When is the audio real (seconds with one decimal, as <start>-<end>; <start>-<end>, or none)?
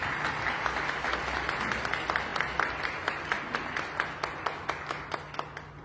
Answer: 0.0-5.8